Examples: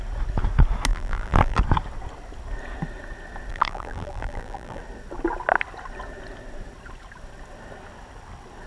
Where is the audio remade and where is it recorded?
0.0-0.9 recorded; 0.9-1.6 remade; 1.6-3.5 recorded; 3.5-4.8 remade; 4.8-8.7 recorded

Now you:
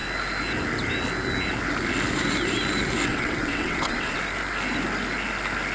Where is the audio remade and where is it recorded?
0.0-3.1 recorded; 3.1-4.2 remade; 4.2-5.7 recorded

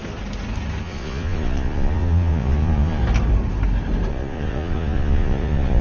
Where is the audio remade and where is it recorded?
0.0-0.8 recorded; 0.8-3.0 remade; 3.0-4.1 recorded; 4.1-5.8 remade

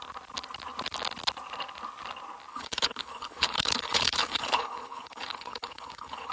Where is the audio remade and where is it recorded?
0.0-2.5 recorded; 2.5-6.3 remade

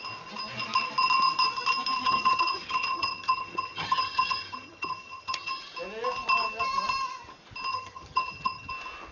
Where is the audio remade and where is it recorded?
0.0-2.0 recorded; 2.0-5.5 remade; 5.5-7.7 recorded; 7.7-8.7 remade; 8.7-9.1 recorded

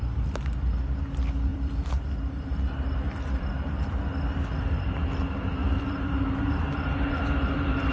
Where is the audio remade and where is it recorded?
0.0-1.5 recorded; 1.5-4.0 remade; 4.0-7.9 recorded

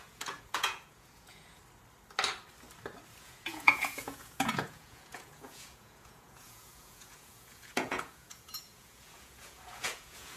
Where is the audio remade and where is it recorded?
0.0-1.6 remade; 1.6-3.2 recorded; 3.2-10.4 remade